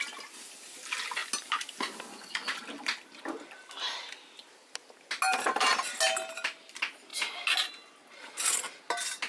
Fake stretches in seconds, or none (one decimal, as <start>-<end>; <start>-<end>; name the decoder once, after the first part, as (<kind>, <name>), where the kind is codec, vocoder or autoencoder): none